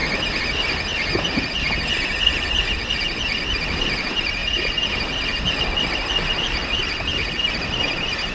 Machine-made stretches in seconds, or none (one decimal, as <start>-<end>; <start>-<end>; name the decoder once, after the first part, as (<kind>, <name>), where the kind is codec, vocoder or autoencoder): 3.4-4.4 (vocoder, BigVGAN v2); 5.8-8.3